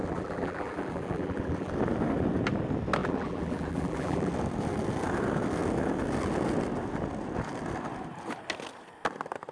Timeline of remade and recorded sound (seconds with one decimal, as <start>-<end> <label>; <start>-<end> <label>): 0.0-1.7 remade; 1.7-3.0 recorded; 3.0-4.3 remade; 4.3-9.5 recorded